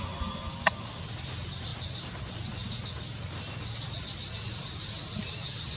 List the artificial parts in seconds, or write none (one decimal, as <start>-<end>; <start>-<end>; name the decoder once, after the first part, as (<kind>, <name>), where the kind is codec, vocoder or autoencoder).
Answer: none